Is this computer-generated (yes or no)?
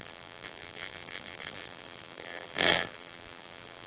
yes